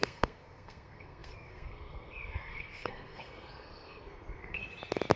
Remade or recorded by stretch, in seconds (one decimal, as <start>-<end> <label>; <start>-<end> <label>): 0.0-4.6 remade; 4.6-5.2 recorded